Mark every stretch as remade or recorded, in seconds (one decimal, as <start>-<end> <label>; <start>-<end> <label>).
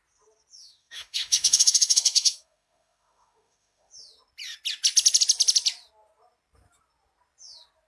0.0-0.6 recorded; 0.6-3.9 remade; 3.9-7.9 recorded